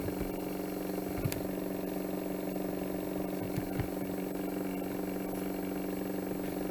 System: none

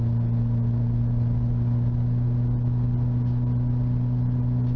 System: none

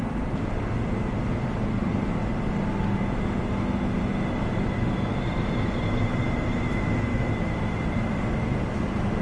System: none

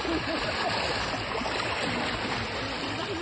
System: none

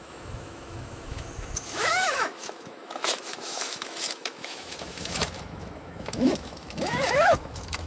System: autoencoder, DAC-VAE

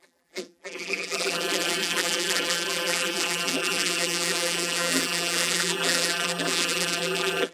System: vocoder, BigVGAN v2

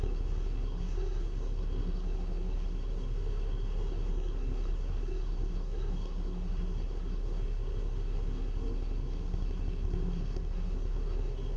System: codec, SNAC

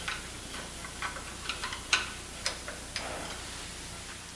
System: none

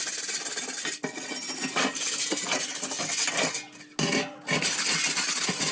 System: none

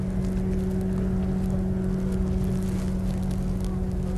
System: none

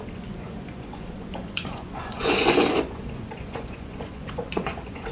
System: vocoder, Vocos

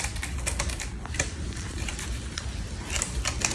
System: vocoder, BigVGAN v2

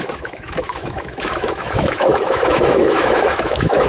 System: autoencoder, DAC-VAE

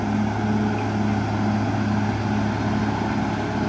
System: none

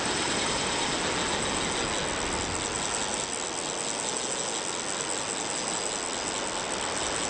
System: none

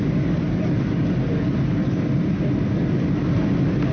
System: none